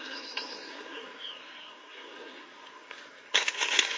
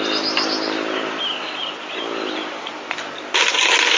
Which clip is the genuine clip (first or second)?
second